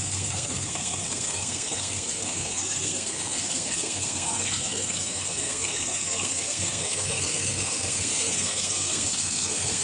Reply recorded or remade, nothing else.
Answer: remade